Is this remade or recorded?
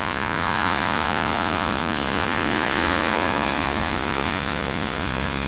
remade